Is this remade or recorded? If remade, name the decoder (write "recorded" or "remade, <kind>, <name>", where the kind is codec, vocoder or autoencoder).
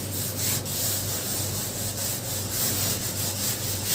recorded